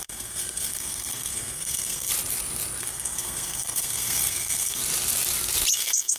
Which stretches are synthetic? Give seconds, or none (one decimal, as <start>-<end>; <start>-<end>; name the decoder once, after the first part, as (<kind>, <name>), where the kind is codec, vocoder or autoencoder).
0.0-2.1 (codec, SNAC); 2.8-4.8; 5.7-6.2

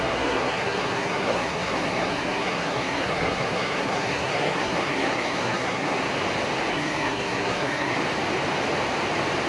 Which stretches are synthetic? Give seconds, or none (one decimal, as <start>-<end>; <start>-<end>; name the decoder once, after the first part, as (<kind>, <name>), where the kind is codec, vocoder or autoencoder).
0.0-6.0 (codec, SNAC); 6.7-8.0

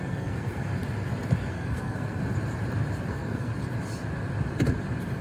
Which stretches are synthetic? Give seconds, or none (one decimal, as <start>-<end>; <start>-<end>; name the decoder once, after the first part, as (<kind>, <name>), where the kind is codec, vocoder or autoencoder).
0.0-0.7 (codec, SNAC); 1.5-2.2; 3.1-3.5

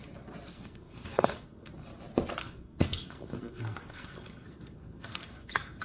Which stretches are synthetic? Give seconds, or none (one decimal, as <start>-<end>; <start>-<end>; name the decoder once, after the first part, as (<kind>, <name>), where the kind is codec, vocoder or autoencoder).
0.5-1.7 (codec, SNAC); 2.4-5.8

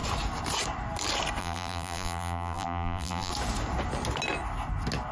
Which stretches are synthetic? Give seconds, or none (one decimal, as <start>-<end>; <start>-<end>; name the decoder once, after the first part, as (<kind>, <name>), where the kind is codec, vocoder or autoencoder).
1.4-3.3 (vocoder, BigVGAN v2)

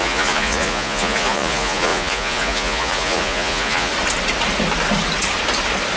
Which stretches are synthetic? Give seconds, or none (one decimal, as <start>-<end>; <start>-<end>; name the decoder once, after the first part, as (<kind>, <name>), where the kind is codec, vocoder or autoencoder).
0.0-3.9 (vocoder, Vocos)